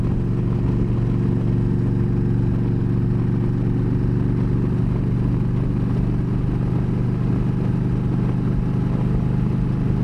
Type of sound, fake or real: real